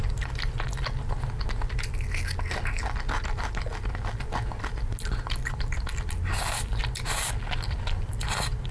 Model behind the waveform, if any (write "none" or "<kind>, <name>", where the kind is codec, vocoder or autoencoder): none